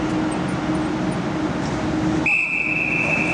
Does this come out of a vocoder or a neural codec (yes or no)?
no